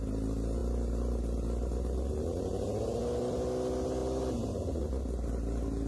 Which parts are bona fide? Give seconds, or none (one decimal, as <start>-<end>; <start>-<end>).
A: 0.0-5.9